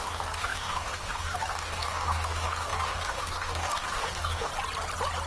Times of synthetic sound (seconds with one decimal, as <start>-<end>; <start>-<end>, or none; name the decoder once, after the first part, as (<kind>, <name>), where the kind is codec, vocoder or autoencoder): 0.0-4.5 (codec, DAC)